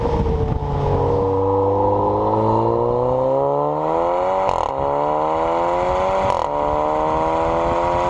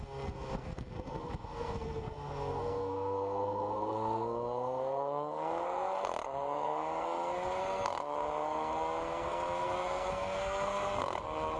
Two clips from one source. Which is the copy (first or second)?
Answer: second